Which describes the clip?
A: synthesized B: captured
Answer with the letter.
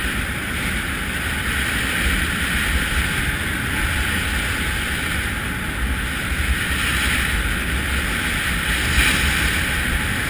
B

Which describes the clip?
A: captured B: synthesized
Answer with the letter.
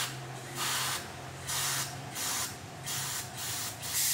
A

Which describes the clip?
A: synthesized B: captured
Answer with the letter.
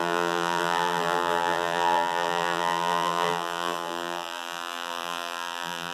A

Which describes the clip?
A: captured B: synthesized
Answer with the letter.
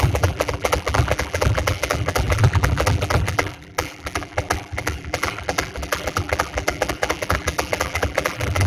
B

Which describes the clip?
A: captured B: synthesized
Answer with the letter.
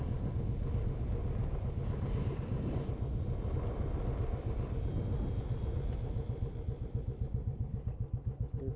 A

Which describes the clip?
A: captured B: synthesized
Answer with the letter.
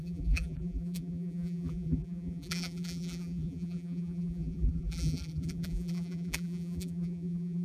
B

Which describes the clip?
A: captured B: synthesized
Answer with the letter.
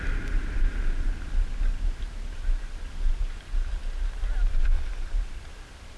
A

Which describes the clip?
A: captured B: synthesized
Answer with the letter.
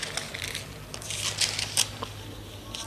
A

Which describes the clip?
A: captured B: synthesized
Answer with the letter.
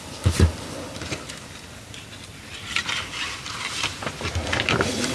B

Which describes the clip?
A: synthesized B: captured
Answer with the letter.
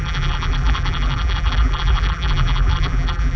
A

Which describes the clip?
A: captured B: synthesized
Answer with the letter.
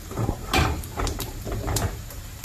B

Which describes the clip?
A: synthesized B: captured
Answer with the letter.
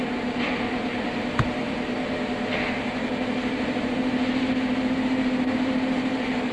A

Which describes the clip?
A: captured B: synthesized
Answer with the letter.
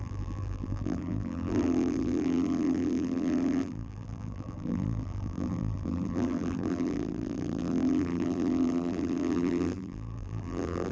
B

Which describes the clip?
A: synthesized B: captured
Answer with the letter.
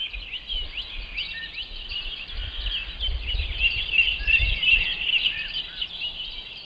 B